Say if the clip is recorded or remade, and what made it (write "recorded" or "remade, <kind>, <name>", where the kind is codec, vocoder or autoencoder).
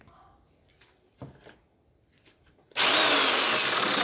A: recorded